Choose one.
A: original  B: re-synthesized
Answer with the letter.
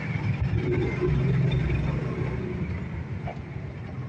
A